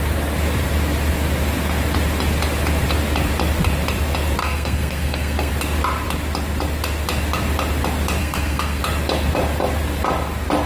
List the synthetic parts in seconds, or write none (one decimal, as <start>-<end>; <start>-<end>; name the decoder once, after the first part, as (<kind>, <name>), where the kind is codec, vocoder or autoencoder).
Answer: 4.4-5.5 (codec, SNAC); 8.2-8.8